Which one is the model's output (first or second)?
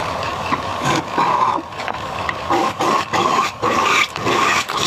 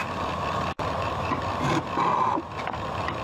first